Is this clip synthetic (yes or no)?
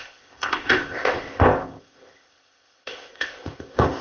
yes